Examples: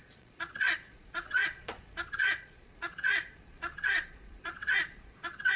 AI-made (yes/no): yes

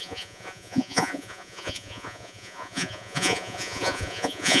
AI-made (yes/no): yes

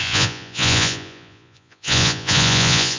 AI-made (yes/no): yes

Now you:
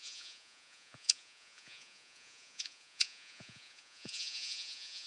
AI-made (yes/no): yes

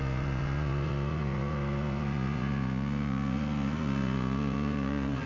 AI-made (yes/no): yes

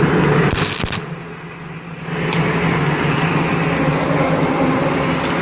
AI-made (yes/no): no